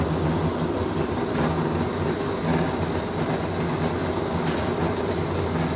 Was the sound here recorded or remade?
recorded